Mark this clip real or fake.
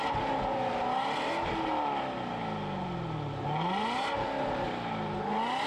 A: real